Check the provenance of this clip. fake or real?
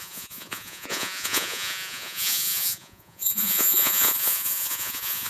fake